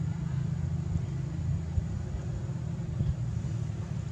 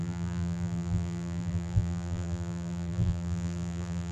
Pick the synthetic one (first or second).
second